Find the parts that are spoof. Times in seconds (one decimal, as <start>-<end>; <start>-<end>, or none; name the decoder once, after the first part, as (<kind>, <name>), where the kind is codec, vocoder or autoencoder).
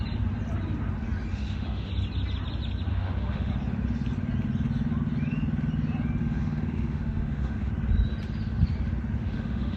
1.3-1.9 (autoencoder, DAC-VAE); 2.9-3.5; 6.2-7.7; 9.2-9.8